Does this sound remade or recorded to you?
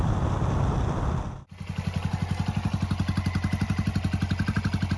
recorded